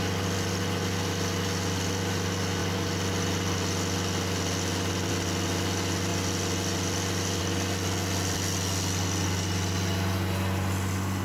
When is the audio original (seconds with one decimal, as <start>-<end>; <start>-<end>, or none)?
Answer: 0.0-11.2